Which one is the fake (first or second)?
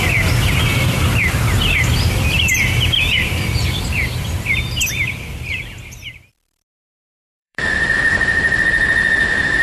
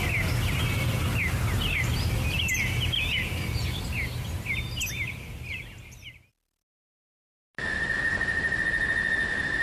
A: first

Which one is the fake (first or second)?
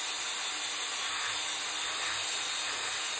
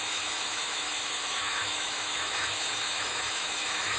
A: second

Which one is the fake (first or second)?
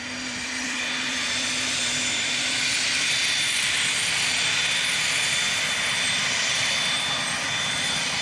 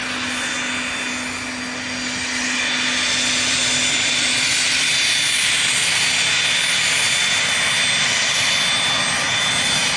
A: first